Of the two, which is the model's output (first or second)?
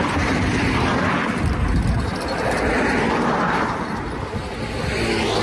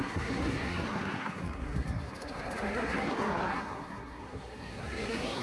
second